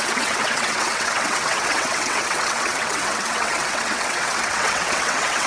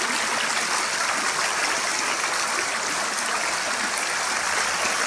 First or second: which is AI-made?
first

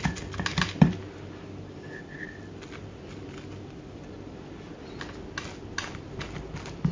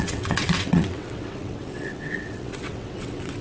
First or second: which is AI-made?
second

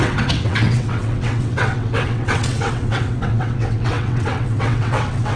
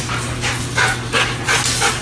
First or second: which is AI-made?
first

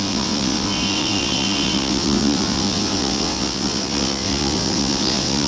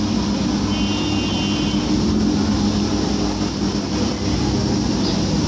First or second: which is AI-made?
first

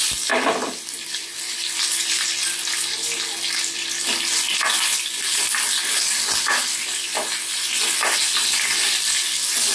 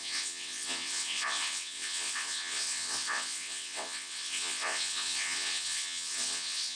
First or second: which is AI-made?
second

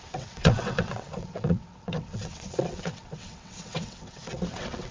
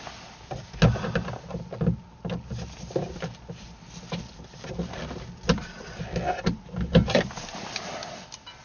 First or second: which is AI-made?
first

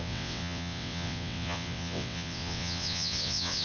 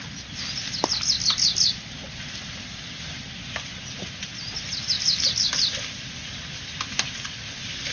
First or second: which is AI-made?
first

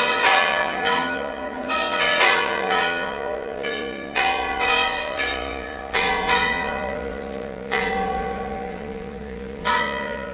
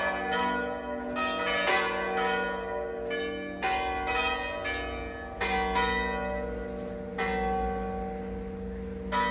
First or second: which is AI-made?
first